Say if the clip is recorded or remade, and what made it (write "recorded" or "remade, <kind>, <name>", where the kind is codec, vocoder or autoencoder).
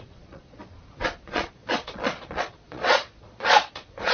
remade, vocoder, Vocos